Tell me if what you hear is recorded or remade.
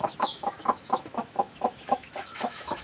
remade